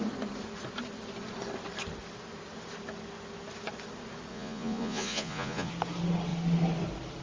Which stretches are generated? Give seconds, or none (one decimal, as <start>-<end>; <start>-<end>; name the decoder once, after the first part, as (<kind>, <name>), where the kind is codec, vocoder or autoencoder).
4.3-5.7 (vocoder, Vocos)